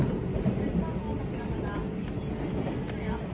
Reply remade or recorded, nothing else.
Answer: recorded